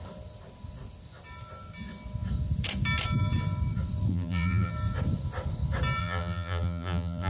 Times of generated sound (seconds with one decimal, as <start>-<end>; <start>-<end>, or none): 4.1-4.7; 6.0-7.3